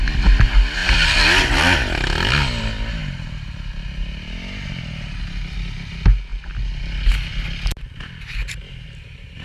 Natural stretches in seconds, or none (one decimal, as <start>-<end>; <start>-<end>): 0.0-9.4